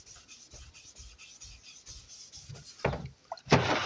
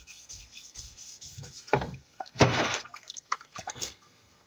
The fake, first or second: second